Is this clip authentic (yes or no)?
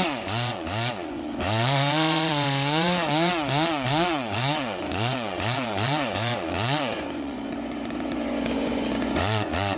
no